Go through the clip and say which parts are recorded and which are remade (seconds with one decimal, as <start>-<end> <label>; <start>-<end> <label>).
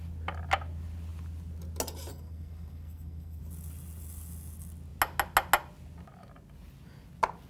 0.0-2.1 recorded; 2.1-3.4 remade; 3.4-7.5 recorded